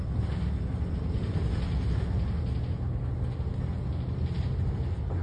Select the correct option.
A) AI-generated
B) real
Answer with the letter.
B